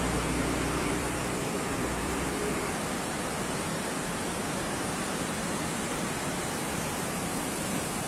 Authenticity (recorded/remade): remade